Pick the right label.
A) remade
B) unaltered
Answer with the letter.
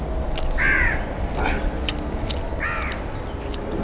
B